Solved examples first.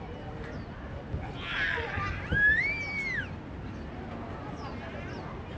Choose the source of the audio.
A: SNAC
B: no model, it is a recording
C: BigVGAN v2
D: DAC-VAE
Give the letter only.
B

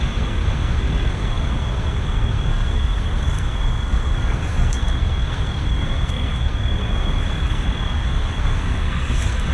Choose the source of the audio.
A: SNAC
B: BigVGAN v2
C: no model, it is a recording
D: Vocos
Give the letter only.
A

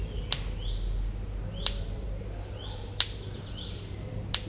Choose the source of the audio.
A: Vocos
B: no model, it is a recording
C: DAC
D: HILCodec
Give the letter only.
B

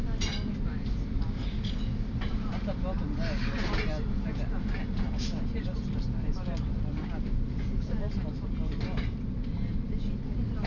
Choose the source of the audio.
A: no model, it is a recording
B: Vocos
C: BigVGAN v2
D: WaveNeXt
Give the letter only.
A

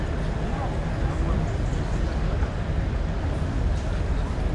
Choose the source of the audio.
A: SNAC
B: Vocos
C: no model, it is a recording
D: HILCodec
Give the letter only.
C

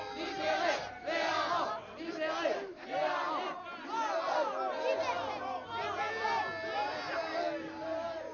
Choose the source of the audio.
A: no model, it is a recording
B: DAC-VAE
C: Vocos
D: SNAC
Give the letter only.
A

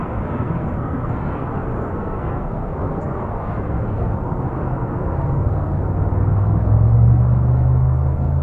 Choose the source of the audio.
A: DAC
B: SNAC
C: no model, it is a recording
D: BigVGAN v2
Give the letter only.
B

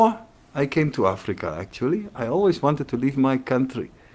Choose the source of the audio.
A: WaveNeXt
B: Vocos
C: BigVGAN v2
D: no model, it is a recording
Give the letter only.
D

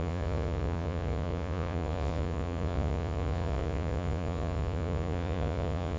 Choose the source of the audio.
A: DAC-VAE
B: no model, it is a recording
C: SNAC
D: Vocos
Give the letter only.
D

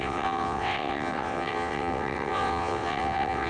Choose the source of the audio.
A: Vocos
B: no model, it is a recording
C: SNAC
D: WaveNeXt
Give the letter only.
D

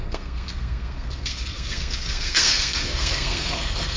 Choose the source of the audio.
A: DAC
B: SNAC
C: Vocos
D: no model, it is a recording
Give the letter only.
B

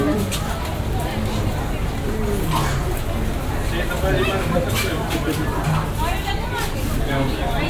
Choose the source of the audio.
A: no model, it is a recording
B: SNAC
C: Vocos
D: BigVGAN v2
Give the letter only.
A